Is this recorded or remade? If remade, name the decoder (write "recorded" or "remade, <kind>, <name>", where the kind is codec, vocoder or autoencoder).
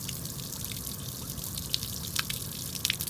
recorded